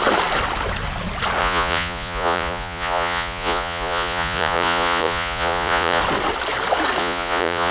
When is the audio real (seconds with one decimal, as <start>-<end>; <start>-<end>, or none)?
0.0-1.4; 6.0-7.0